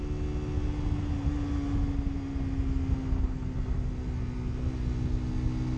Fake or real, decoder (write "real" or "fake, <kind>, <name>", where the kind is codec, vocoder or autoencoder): real